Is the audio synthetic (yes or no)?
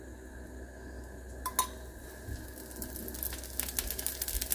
no